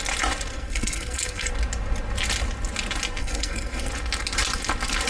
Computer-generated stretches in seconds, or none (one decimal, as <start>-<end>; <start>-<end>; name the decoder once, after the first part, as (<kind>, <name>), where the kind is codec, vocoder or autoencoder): 0.5-1.5 (codec, SNAC); 3.2-3.9

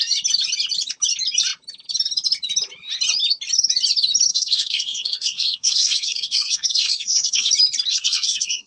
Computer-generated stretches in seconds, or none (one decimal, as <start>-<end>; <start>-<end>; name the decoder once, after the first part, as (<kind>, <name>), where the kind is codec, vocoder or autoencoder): 4.3-7.5 (codec, SNAC); 7.9-8.7

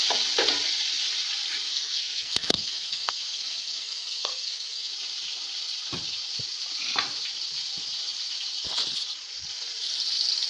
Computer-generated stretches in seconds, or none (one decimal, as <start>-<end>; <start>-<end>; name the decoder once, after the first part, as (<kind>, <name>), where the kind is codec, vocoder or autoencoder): 1.7-4.9 (codec, SNAC)

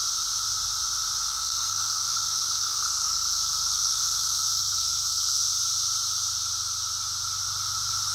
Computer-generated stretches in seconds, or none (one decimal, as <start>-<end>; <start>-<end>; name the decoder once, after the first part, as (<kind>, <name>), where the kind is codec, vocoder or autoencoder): 1.3-5.5 (codec, SNAC)